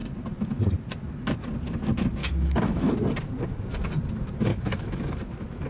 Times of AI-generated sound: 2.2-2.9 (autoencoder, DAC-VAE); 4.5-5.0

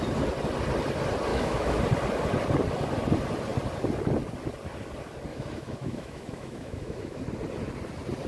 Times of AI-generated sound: 1.3-1.8 (autoencoder, DAC-VAE); 5.3-7.2

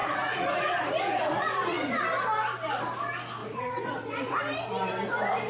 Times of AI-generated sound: 0.0-2.0 (vocoder, Vocos); 3.4-4.4

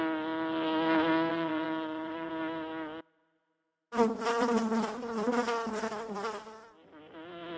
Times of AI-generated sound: 1.3-2.3 (vocoder, WaveNeXt)

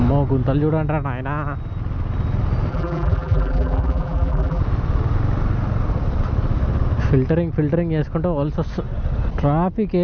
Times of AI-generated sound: 2.7-4.6 (vocoder, BigVGAN v2)